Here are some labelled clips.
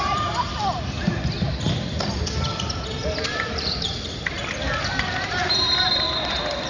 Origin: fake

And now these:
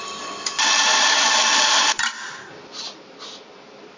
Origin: fake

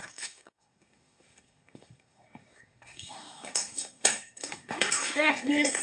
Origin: fake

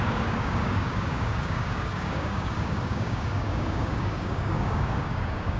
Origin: fake